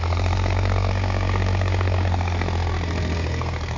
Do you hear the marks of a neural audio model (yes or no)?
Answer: yes